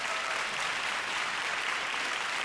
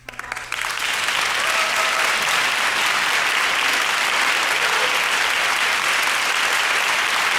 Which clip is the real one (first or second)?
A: second